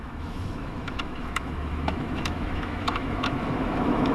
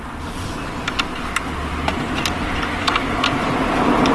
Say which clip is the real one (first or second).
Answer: second